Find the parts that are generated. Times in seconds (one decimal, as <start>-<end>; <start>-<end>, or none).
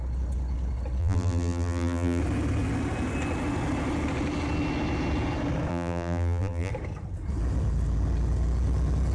1.0-2.2; 5.7-6.7